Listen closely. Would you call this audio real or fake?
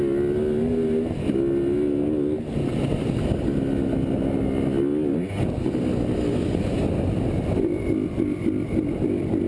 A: real